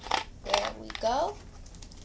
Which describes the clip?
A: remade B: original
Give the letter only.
B